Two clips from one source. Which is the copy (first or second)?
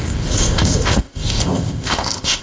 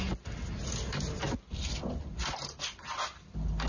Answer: first